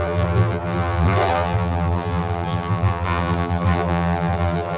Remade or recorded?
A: remade